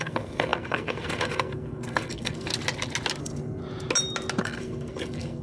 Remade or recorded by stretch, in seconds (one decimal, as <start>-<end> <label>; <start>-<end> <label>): 0.0-2.5 remade; 2.5-3.2 recorded; 3.2-3.6 remade; 3.6-4.4 recorded; 4.4-5.4 remade